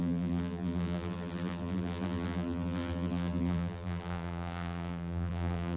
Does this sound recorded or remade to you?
remade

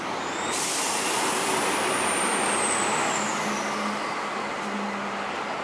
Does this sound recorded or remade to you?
recorded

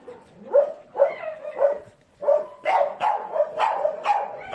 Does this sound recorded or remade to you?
remade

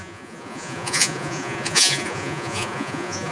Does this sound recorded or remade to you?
remade